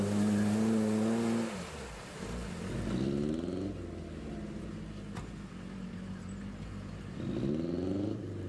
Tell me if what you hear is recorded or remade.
recorded